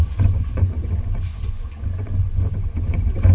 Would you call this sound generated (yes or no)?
yes